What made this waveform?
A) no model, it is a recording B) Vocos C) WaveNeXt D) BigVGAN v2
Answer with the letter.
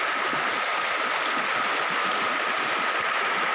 A